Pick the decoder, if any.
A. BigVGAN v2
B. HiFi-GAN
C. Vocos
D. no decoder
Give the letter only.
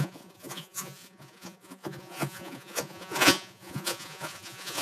C